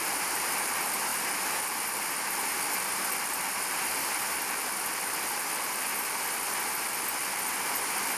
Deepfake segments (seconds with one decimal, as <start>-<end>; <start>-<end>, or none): none